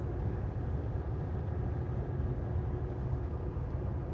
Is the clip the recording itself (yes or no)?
yes